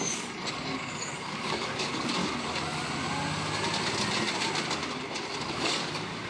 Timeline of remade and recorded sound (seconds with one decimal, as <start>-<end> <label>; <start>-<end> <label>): 0.0-2.2 remade; 2.2-5.4 recorded; 5.4-6.3 remade